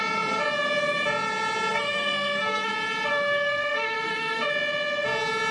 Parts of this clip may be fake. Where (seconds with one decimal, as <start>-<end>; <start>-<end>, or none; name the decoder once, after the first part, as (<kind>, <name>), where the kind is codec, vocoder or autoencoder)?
1.7-2.7 (codec, SNAC); 3.1-4.5